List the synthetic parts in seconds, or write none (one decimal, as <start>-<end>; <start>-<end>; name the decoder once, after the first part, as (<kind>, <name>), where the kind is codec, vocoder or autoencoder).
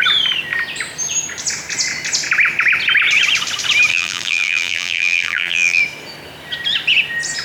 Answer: 3.9-5.8 (vocoder, BigVGAN v2)